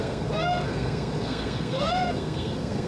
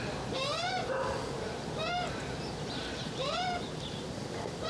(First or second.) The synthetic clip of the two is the first